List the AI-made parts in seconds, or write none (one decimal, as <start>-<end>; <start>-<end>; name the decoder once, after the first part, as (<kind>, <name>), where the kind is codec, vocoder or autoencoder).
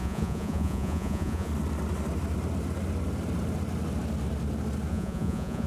0.0-1.5 (vocoder, Vocos); 4.9-5.7